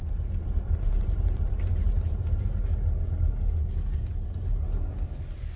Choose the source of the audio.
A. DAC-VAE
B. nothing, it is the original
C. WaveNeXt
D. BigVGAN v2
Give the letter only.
B